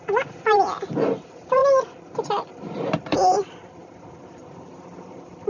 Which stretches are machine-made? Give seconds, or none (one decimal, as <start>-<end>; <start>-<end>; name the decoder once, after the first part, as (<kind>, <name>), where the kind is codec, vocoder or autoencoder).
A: 0.0-5.5 (vocoder, BigVGAN v2)